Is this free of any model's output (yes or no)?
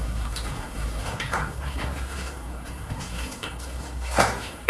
no